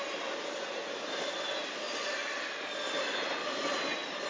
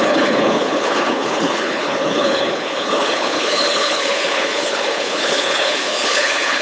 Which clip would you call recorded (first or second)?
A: first